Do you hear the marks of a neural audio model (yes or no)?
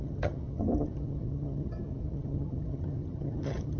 yes